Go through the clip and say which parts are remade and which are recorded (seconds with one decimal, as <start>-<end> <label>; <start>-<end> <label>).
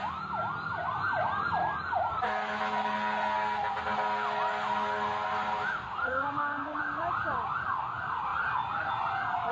0.0-6.0 recorded; 6.0-6.8 remade; 6.8-9.5 recorded